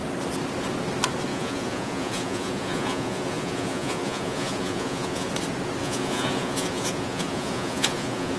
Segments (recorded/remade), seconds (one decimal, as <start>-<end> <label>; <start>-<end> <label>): 0.0-1.3 recorded; 1.3-5.3 remade; 5.3-5.8 recorded; 5.8-8.4 remade